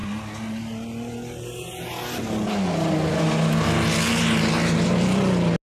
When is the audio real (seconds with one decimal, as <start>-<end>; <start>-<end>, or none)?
0.0-5.7